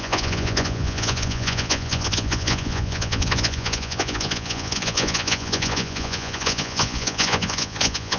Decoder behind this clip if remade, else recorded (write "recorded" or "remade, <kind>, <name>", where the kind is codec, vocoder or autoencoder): remade, vocoder, Vocos